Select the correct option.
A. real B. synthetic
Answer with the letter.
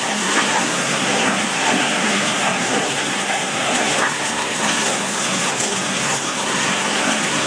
B